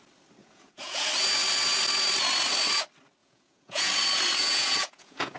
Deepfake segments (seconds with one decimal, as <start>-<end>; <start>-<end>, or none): 0.4-1.1; 3.2-3.9; 4.4-5.4